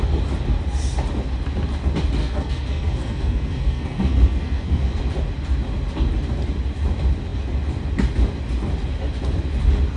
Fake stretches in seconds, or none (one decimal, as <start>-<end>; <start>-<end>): 2.2-5.0